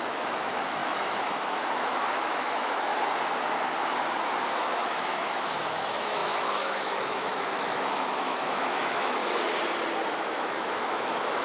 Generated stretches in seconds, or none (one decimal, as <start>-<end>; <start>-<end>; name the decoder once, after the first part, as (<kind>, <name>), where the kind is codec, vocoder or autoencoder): 0.0-2.9 (autoencoder, DAC-VAE); 4.6-9.2; 10.2-11.4